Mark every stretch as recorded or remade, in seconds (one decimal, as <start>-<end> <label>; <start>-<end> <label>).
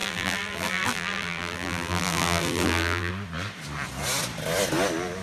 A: 0.0-3.1 remade; 3.1-5.2 recorded